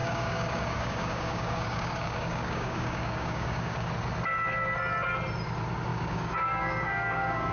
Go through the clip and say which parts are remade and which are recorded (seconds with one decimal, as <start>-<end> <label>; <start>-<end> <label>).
0.0-3.9 remade; 3.9-5.9 recorded; 5.9-7.5 remade